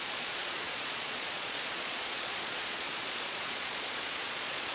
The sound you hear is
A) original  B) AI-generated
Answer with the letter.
B